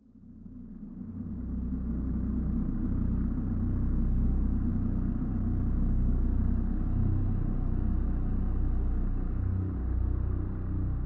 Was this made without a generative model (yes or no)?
yes